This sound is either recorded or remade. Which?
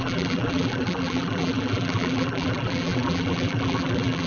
remade